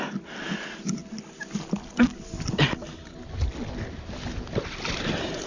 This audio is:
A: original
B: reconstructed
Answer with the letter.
A